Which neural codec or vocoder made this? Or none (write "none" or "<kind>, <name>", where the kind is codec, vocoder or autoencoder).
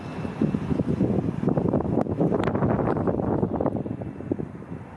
vocoder, BigVGAN v2